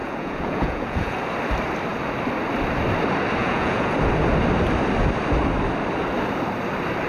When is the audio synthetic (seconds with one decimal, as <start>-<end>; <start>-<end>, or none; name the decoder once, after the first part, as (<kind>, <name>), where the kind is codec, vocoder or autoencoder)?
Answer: 0.0-1.2 (vocoder, Vocos); 3.4-3.9